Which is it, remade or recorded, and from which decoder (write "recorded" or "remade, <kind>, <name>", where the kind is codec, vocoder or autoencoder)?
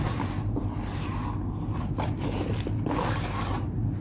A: recorded